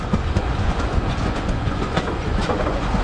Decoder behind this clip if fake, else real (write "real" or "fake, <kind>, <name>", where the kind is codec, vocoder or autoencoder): fake, vocoder, Vocos